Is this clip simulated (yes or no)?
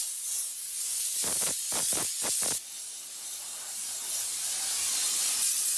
no